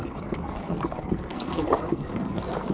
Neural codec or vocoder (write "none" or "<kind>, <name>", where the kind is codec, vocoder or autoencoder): codec, SNAC